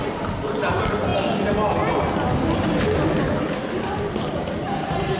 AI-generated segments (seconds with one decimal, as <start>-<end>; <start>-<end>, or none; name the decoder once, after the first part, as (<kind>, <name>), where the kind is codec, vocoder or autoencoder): none